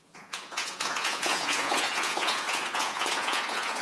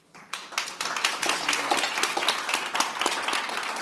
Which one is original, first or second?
second